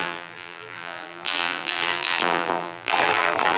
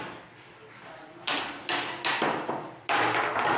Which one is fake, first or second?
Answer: first